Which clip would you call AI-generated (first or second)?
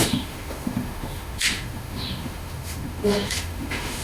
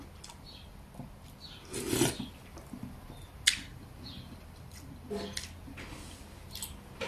first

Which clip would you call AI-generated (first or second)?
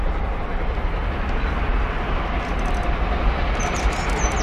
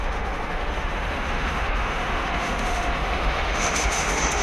second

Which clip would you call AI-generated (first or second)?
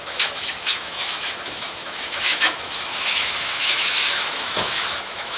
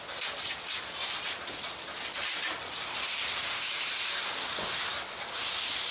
first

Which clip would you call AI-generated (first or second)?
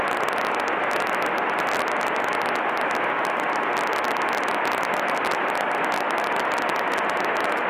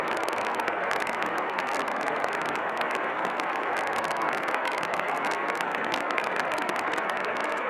second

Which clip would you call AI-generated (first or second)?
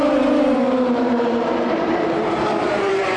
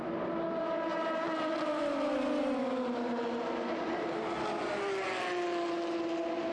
first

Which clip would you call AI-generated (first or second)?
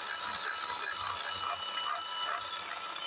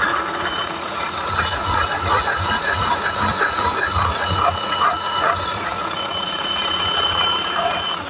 second